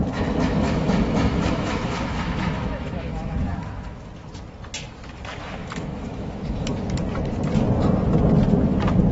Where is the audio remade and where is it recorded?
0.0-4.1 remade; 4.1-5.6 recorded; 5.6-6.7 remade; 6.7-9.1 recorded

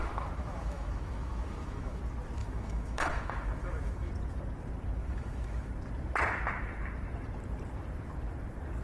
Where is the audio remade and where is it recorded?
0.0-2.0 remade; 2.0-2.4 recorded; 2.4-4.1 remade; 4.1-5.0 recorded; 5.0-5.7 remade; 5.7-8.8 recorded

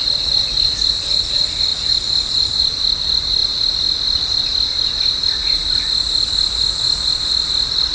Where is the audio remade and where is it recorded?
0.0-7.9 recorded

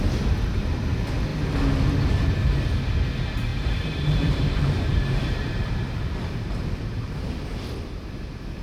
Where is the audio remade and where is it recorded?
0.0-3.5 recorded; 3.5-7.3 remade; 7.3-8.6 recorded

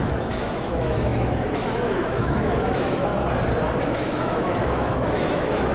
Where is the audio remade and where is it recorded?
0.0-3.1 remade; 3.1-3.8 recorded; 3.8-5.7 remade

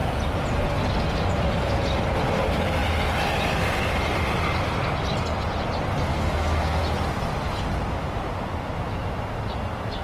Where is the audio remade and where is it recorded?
0.0-6.1 recorded; 6.1-6.8 remade; 6.8-10.0 recorded